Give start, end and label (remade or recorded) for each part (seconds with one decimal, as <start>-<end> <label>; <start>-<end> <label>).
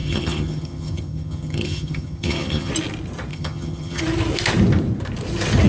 0.0-2.7 remade; 2.7-3.3 recorded; 3.3-4.0 remade; 4.0-5.7 recorded